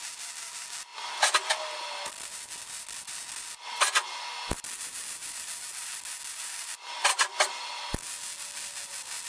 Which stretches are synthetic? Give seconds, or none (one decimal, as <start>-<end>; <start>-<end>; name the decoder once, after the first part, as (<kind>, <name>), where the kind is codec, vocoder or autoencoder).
none